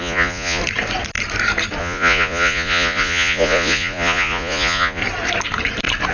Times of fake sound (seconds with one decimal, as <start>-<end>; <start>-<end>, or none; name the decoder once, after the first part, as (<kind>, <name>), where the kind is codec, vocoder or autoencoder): 0.0-0.6 (vocoder, Vocos); 1.8-5.0